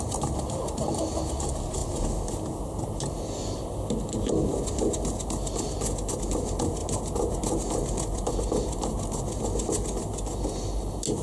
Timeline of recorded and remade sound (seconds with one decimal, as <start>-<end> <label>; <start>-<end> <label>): 0.0-11.2 recorded